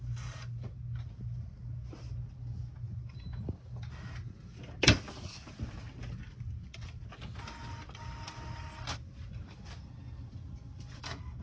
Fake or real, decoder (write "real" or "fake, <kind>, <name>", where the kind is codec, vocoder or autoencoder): real